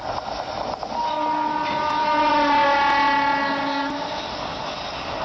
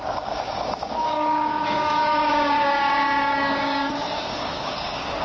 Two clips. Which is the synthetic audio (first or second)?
second